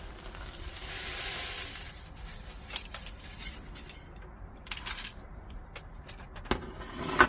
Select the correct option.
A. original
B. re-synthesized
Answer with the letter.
A